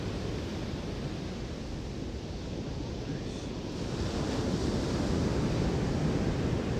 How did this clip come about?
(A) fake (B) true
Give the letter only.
B